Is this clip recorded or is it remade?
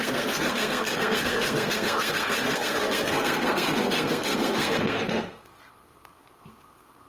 remade